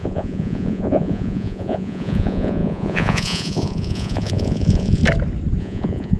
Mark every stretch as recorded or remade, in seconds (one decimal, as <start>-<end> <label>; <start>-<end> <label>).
0.0-5.0 remade; 5.0-5.6 recorded; 5.6-6.2 remade